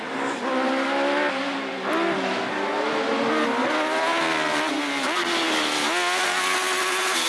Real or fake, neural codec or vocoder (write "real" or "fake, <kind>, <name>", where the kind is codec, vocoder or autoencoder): real